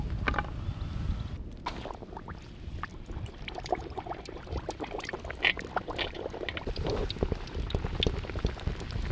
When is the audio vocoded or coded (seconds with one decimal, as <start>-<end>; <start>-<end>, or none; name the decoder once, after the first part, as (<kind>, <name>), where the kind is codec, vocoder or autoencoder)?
2.9-5.2 (vocoder, BigVGAN v2)